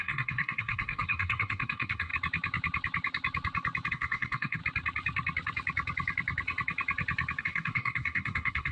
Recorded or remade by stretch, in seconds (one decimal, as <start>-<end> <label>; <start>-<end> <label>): 0.0-2.1 remade; 2.1-3.9 recorded; 3.9-4.6 remade; 4.6-7.4 recorded; 7.4-8.7 remade